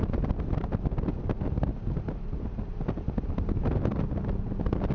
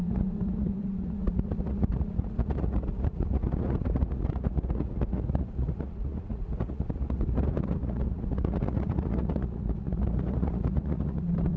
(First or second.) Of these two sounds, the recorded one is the first